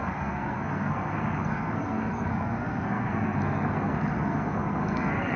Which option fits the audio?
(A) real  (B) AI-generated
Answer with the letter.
B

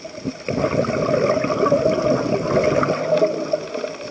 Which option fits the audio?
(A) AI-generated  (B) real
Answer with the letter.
B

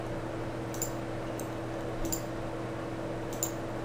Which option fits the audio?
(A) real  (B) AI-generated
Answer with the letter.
A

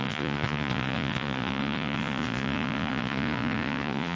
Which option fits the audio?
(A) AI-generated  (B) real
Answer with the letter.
A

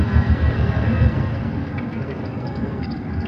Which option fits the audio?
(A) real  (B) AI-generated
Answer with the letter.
B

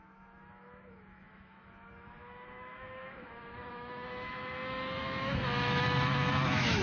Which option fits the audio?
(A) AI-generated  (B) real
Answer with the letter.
A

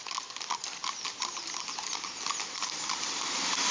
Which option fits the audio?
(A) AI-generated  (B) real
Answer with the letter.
B